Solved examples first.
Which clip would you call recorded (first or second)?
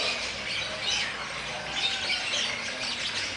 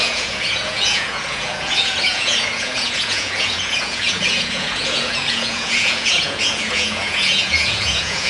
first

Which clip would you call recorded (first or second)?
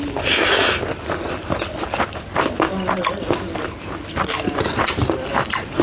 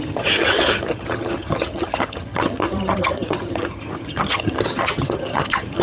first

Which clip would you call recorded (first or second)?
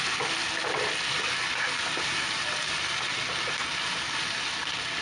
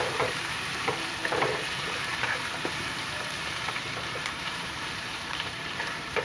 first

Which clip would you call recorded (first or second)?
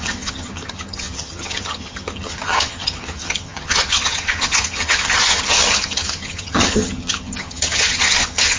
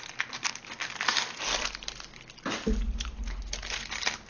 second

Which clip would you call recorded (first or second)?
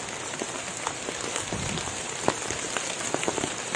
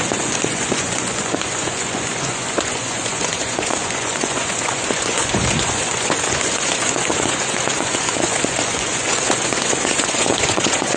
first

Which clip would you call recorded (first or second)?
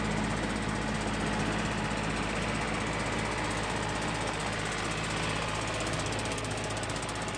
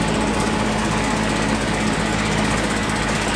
first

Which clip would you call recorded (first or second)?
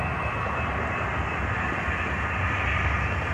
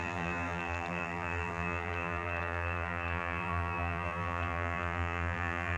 first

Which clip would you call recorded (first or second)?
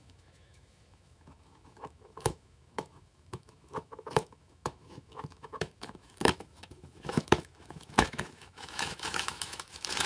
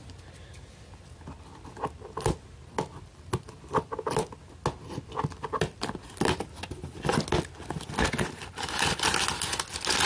second